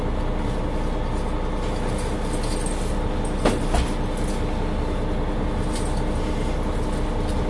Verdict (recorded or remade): recorded